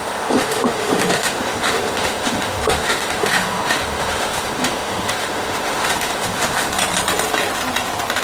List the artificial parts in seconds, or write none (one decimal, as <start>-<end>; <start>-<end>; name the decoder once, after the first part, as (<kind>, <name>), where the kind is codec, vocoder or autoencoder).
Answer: 0.0-6.7 (autoencoder, DAC-VAE)